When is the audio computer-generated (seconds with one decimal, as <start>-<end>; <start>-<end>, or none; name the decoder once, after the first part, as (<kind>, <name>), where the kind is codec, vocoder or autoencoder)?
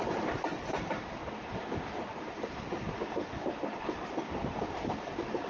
0.0-1.2 (vocoder, BigVGAN v2); 2.0-3.2; 3.7-5.5